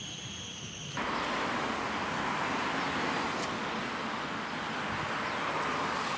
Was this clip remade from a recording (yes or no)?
no